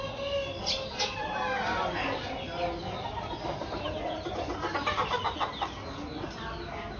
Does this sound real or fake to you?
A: real